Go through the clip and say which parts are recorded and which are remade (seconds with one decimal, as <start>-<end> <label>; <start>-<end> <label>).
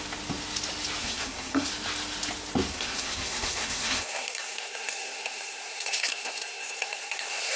0.0-1.0 recorded; 1.0-1.7 remade; 1.7-2.7 recorded; 2.7-7.6 remade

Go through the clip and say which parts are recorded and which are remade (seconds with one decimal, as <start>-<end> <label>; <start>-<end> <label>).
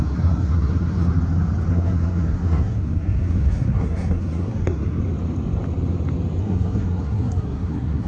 0.0-1.1 remade; 1.1-1.7 recorded; 1.7-5.0 remade; 5.0-6.4 recorded; 6.4-8.1 remade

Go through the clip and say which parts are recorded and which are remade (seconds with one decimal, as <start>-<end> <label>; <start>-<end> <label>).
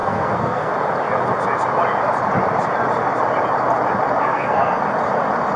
0.0-0.7 remade; 0.7-4.2 recorded; 4.2-4.8 remade; 4.8-5.6 recorded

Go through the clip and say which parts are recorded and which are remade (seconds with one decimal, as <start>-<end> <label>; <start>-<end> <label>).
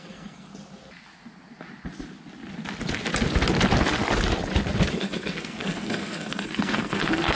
0.0-0.5 remade; 0.5-4.9 recorded; 4.9-7.4 remade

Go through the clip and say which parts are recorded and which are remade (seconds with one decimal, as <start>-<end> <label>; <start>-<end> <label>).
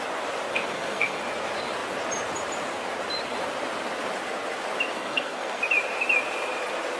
0.0-0.5 recorded; 0.5-1.2 remade; 1.2-4.9 recorded; 4.9-5.6 remade; 5.6-7.0 recorded